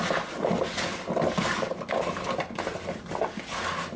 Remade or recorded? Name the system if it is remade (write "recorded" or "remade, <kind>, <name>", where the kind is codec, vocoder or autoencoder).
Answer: recorded